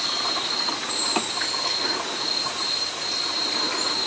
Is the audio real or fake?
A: real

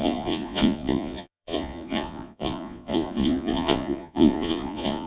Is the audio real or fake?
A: fake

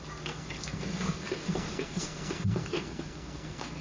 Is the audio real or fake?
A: fake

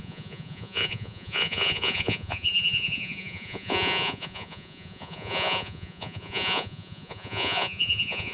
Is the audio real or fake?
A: fake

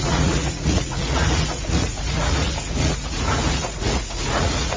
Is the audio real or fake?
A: fake